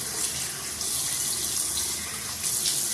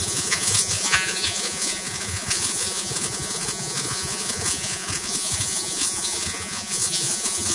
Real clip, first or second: first